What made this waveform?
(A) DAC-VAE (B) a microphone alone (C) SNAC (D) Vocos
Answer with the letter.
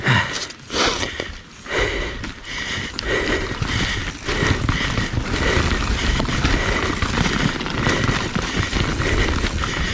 B